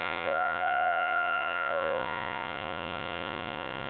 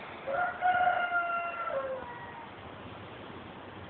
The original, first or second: second